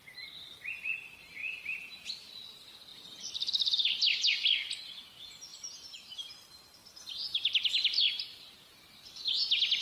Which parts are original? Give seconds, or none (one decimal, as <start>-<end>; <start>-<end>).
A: 0.0-1.4; 2.4-5.5; 6.3-9.8